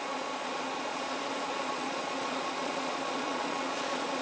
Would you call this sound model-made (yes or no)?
yes